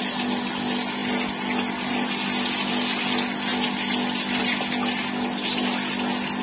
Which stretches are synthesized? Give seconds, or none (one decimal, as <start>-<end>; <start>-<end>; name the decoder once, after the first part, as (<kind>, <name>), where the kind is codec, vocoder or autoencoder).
none